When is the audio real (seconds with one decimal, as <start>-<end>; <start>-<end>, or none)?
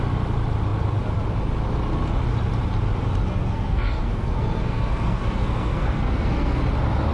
0.0-3.4; 6.6-7.1